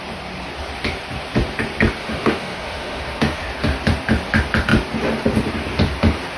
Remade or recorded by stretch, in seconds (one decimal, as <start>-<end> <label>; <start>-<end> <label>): 0.0-2.0 recorded; 2.0-3.4 remade; 3.4-6.4 recorded